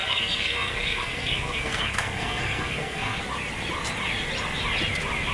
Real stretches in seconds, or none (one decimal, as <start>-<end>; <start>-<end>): 3.2-5.3